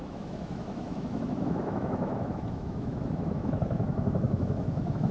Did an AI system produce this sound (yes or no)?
yes